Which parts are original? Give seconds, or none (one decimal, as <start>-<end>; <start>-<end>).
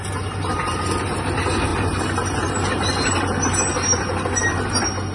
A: 0.0-5.1